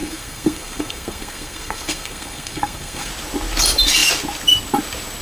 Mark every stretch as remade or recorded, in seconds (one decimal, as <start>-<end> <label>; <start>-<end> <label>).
0.0-3.1 remade; 3.1-5.2 recorded

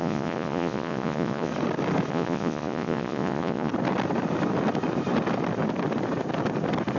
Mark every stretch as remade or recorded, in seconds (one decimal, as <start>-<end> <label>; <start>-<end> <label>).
0.0-1.5 remade; 1.5-2.1 recorded; 2.1-3.7 remade; 3.7-7.0 recorded

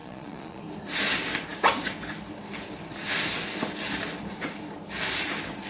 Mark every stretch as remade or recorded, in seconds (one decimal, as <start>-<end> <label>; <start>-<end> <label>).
0.0-0.6 remade; 0.6-5.7 recorded

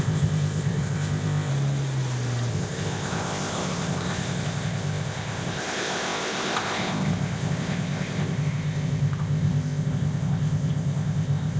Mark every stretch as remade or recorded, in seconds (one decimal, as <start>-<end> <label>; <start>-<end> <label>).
0.0-1.5 remade; 1.5-2.5 recorded; 2.5-11.6 remade

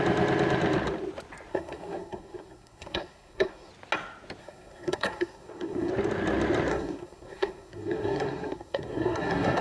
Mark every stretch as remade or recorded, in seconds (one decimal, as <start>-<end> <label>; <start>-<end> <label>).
0.0-1.5 recorded; 1.5-3.7 remade; 3.7-4.4 recorded; 4.4-5.9 remade; 5.9-6.7 recorded; 6.7-9.6 remade